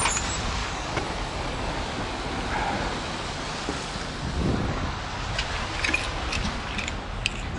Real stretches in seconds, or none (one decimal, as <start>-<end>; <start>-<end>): 0.0-0.6; 1.7-4.4; 5.0-7.6